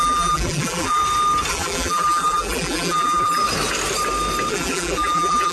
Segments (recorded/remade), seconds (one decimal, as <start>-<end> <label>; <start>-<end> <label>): 0.0-1.0 remade; 1.0-1.5 recorded; 1.5-3.4 remade; 3.4-4.5 recorded; 4.5-5.5 remade